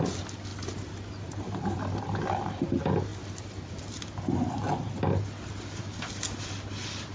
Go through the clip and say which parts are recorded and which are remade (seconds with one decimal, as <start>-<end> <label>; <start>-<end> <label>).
0.0-0.5 recorded; 0.5-1.8 remade; 1.8-3.1 recorded; 3.1-3.8 remade; 3.8-7.1 recorded

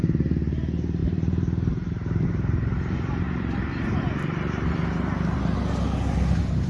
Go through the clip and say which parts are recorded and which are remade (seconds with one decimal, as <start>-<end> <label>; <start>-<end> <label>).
0.0-1.0 recorded; 1.0-4.0 remade; 4.0-6.7 recorded

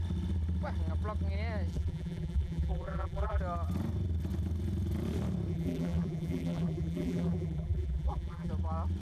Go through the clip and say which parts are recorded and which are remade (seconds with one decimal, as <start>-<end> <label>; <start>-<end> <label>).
0.0-1.7 recorded; 1.7-3.4 remade; 3.4-5.5 recorded; 5.5-8.5 remade; 8.5-9.0 recorded

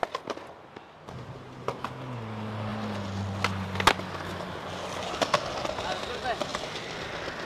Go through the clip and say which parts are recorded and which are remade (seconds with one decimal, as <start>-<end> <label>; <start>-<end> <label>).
0.0-6.5 recorded; 6.5-7.4 remade

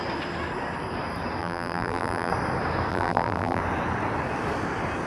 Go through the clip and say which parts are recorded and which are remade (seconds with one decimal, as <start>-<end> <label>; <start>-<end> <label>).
0.0-1.4 recorded; 1.4-2.3 remade; 2.3-2.9 recorded; 2.9-3.6 remade; 3.6-5.1 recorded